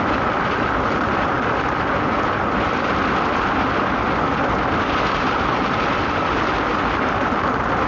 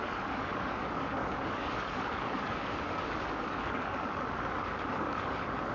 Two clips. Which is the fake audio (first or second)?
second